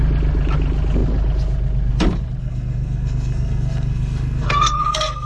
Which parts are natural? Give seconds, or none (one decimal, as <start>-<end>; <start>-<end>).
0.0-2.4